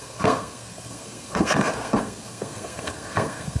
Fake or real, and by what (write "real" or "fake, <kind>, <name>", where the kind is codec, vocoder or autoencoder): fake, codec, SNAC